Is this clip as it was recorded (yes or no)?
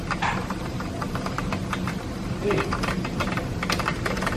yes